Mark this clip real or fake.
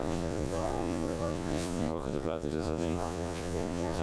fake